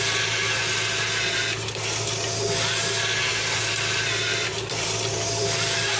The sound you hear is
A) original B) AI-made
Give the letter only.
A